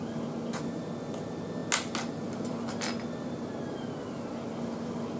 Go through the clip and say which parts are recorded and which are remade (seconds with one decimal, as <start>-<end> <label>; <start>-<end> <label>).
0.0-5.2 recorded